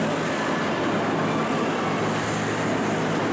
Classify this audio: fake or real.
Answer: real